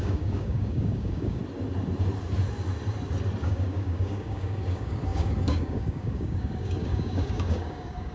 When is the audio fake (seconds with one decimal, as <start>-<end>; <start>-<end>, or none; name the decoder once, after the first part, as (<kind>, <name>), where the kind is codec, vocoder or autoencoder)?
0.0-1.4 (codec, DAC); 3.4-8.1